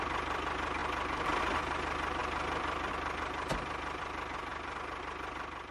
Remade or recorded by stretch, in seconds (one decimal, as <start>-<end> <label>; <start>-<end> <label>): 0.0-0.8 remade; 0.8-1.4 recorded; 1.4-5.7 remade